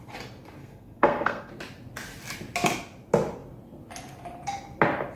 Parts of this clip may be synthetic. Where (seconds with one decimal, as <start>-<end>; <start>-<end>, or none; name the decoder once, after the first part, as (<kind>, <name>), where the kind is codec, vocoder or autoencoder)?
0.6-1.5 (codec, SNAC)